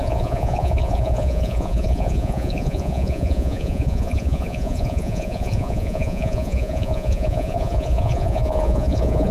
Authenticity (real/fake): fake